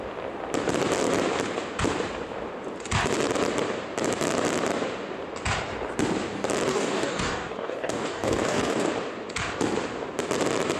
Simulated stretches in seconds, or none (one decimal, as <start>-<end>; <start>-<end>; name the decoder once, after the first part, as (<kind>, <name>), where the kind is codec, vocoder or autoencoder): 6.7-8.9 (codec, DAC)